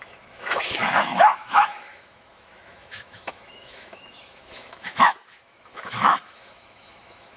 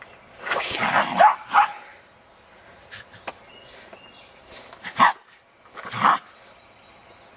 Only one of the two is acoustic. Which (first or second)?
second